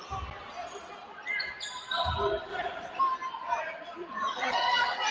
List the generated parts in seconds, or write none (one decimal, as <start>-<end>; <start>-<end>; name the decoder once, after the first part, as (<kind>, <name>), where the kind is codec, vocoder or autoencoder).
2.5-3.0 (vocoder, Vocos); 4.0-5.1